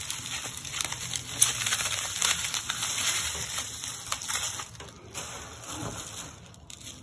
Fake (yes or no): no